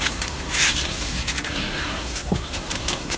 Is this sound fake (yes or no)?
yes